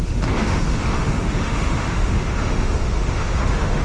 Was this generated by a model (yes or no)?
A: yes